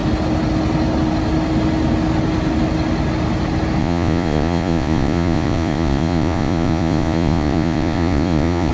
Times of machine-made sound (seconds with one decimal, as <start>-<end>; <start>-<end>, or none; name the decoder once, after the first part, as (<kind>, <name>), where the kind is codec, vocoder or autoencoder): 3.8-8.7 (vocoder, Vocos)